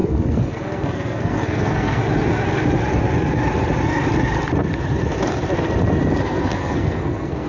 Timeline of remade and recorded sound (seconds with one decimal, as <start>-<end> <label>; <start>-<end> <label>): 0.0-2.0 remade; 2.0-6.2 recorded; 6.2-7.5 remade